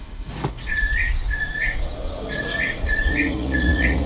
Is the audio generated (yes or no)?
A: yes